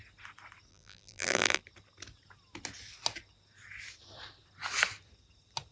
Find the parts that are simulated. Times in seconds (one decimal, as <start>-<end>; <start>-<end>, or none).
0.7-1.6